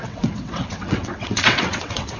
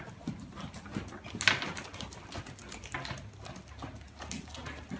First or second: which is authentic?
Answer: second